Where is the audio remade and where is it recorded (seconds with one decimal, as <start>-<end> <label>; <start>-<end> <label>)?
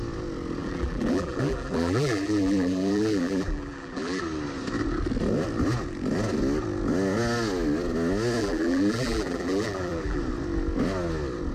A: 0.0-0.6 recorded; 0.6-4.2 remade; 4.2-8.4 recorded; 8.4-10.2 remade; 10.2-11.5 recorded